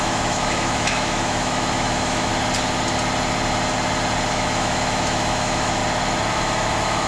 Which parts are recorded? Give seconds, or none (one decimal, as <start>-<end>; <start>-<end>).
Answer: 2.3-4.3; 5.8-6.3